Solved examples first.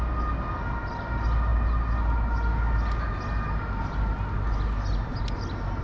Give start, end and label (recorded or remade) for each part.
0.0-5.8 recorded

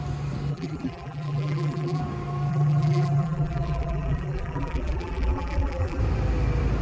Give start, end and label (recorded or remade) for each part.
0.0-0.5 recorded; 0.5-2.0 remade; 2.0-2.5 recorded; 2.5-6.0 remade; 6.0-6.8 recorded

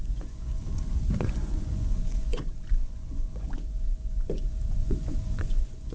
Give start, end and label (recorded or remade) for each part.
0.0-0.6 remade; 0.6-1.1 recorded; 1.1-5.9 remade